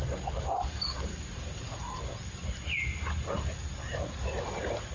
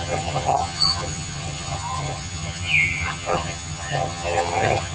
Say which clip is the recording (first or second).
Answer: first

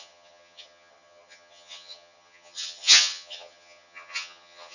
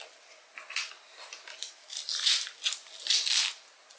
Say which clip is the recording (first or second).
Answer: second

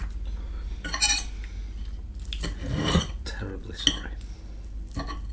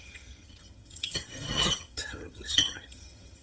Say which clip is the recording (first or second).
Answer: first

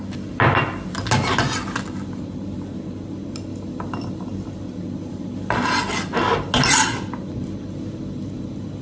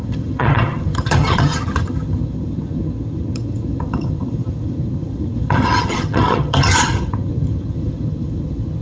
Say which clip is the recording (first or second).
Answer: first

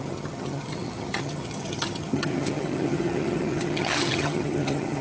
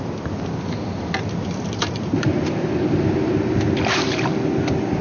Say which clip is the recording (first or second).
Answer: second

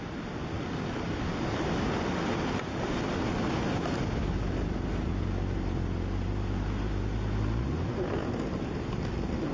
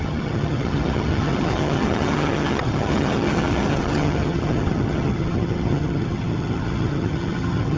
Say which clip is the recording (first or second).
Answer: first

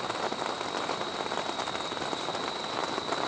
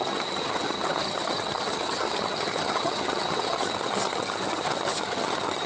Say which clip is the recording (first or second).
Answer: first